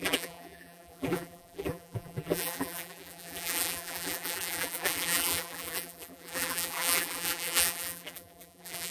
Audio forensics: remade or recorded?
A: remade